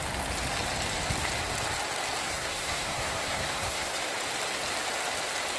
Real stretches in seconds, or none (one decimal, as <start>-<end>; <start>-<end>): 0.0-2.2; 4.0-5.6